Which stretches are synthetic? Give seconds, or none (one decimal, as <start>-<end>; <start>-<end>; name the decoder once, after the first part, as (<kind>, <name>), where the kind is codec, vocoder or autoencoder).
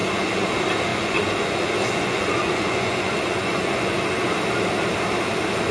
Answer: 0.0-0.5 (vocoder, Vocos); 0.9-4.3